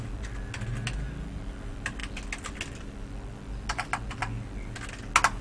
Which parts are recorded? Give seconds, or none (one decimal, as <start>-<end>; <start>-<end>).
0.0-5.4